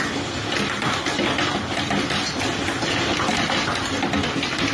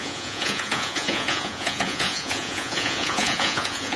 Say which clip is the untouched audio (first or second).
first